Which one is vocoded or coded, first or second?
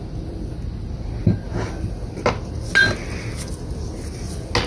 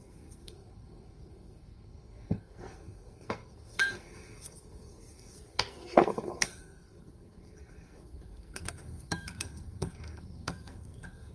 second